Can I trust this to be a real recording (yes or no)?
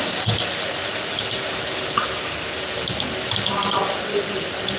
yes